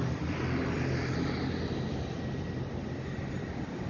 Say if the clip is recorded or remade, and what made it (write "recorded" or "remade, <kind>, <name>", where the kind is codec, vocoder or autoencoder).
recorded